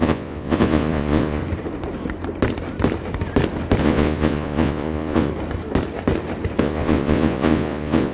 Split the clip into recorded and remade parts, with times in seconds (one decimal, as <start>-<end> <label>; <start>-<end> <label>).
0.0-1.4 remade; 1.4-3.8 recorded; 3.8-5.3 remade; 5.3-6.6 recorded; 6.6-8.1 remade